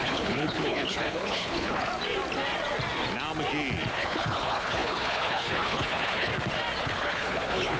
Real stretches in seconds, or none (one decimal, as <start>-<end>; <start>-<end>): 1.9-3.9; 6.3-6.8